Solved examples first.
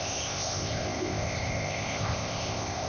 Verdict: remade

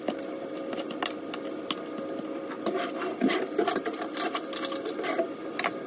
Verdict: recorded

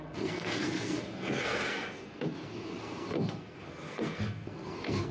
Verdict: remade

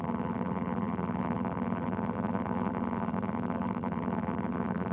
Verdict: remade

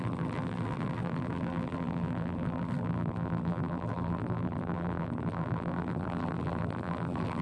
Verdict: remade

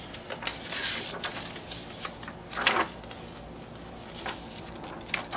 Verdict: recorded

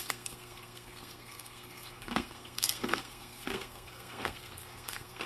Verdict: remade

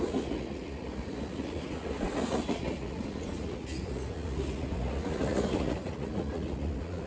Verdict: remade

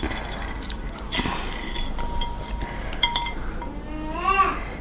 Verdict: recorded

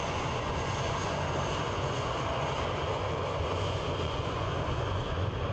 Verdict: remade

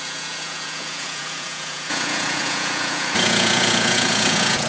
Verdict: remade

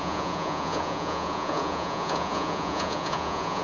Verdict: remade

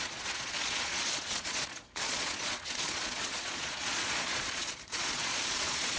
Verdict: remade